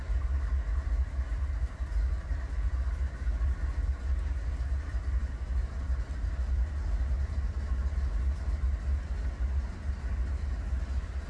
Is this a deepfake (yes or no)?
no